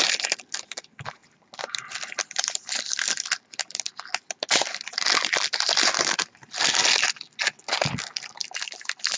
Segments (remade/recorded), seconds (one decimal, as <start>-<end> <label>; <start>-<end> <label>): 0.0-9.2 recorded